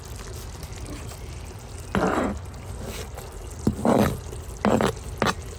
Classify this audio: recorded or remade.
recorded